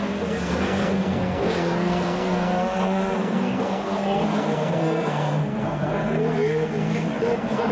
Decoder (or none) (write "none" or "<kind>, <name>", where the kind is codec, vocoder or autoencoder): codec, SNAC